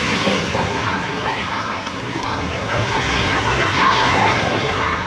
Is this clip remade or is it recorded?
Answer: remade